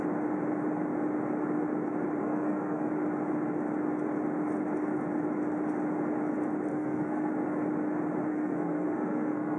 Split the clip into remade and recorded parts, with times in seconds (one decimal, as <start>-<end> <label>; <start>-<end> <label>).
0.0-2.2 recorded; 2.2-2.9 remade; 2.9-6.7 recorded; 6.7-7.3 remade; 7.3-8.3 recorded; 8.3-9.6 remade